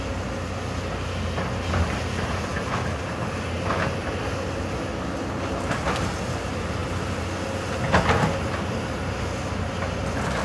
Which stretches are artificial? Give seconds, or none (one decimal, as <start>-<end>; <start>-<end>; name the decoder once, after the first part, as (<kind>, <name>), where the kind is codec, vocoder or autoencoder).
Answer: none